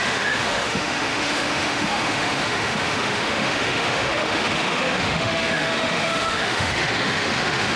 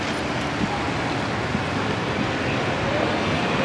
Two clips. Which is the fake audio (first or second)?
first